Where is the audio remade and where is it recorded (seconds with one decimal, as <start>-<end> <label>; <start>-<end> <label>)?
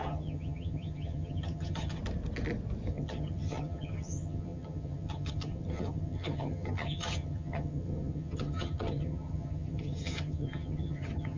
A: 0.0-2.0 remade; 2.0-2.9 recorded; 2.9-11.4 remade